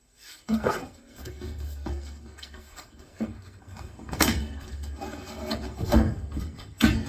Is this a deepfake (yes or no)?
yes